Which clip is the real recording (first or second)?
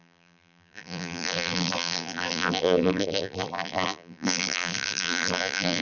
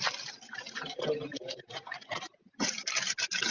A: second